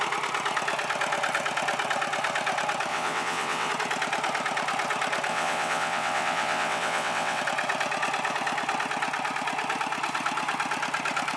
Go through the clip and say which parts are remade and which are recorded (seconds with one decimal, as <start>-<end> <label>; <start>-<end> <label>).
0.0-2.9 recorded; 2.9-3.7 remade; 3.7-5.3 recorded; 5.3-7.4 remade; 7.4-11.4 recorded